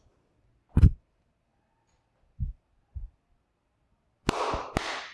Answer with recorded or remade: recorded